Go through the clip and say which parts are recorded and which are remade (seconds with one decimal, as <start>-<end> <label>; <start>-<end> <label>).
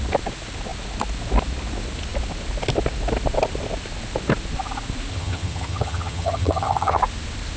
0.0-5.1 recorded; 5.1-7.0 remade; 7.0-7.6 recorded